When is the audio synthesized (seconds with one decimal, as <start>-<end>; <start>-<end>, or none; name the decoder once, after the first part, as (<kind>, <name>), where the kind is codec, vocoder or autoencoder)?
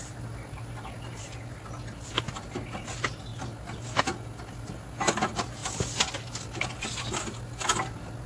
none